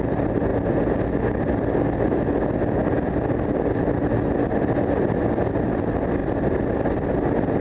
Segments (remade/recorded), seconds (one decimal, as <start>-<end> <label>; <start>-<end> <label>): 0.0-7.6 recorded